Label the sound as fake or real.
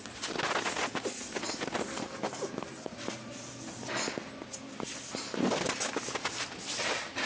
real